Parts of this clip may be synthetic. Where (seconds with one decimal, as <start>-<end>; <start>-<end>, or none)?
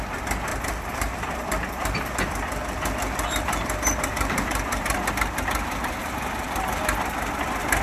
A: 0.5-5.1; 6.0-6.8